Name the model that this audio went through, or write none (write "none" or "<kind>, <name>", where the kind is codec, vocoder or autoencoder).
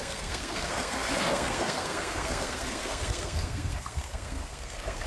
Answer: codec, SNAC